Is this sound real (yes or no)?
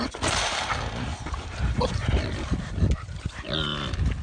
yes